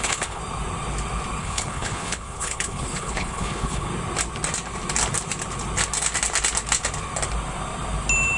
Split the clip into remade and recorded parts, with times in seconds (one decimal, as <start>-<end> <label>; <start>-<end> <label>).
0.0-0.4 remade; 0.4-1.4 recorded; 1.4-3.9 remade; 3.9-8.4 recorded